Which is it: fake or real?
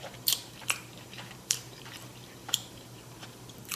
fake